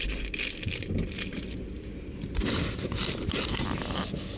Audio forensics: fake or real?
real